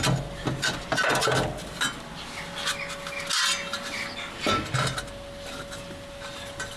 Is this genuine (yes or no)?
yes